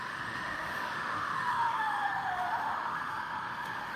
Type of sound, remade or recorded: remade